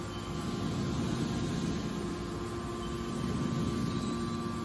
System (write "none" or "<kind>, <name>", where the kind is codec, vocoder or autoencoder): none